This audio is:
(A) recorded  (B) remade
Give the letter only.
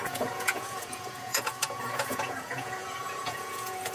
B